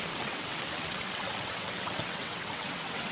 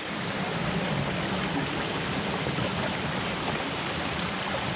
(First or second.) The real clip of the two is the second